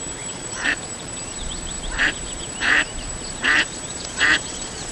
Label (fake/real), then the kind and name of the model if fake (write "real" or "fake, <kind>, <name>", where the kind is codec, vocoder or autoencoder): fake, vocoder, Vocos